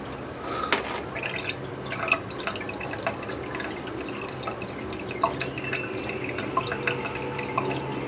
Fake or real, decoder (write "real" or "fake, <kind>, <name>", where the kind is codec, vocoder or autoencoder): real